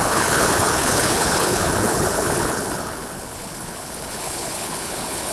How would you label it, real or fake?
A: fake